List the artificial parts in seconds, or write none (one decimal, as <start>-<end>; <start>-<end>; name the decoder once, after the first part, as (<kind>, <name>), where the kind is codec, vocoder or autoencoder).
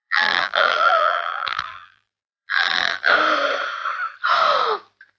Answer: 0.0-3.1 (vocoder, BigVGAN v2)